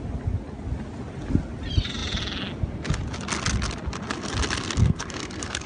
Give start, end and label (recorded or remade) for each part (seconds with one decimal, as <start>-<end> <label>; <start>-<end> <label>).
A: 0.0-4.8 recorded; 4.8-5.7 remade